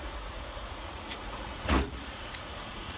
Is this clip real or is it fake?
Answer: fake